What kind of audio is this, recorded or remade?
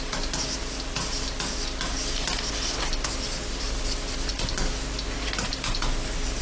recorded